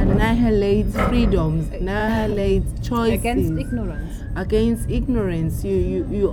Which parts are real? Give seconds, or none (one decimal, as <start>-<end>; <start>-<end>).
0.0-2.0; 2.7-6.3